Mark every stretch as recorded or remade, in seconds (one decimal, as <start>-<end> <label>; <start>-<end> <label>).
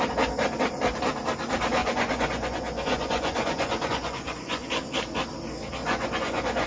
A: 0.0-1.8 recorded; 1.8-4.7 remade; 4.7-5.8 recorded; 5.8-6.7 remade